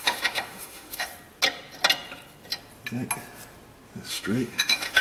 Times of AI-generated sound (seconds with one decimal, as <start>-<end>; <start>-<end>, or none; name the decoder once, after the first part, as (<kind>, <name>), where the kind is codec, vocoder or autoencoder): 0.0-1.1 (autoencoder, DAC-VAE); 4.1-5.0